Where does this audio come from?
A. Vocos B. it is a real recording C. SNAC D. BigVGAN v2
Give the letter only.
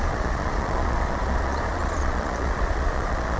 A